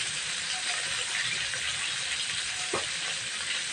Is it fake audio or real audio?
real